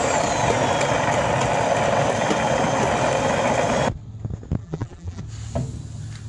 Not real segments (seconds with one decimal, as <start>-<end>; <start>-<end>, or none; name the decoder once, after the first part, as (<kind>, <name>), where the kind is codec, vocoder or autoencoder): 4.6-5.2 (vocoder, BigVGAN v2)